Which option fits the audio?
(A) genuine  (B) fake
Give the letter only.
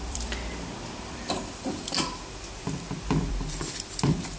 B